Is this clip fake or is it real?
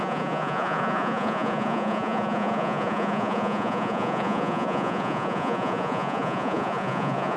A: fake